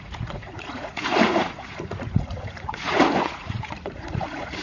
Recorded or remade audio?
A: remade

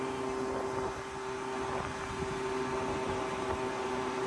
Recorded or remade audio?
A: recorded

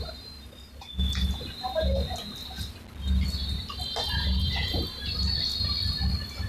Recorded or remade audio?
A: recorded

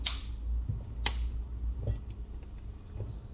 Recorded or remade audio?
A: recorded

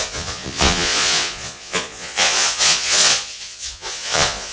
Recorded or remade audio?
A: remade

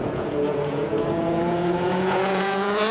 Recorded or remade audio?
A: remade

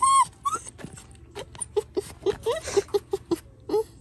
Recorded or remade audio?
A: recorded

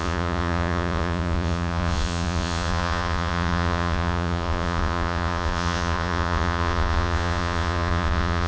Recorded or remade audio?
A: remade